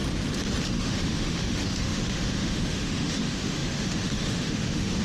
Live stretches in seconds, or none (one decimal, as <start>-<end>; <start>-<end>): 0.0-0.7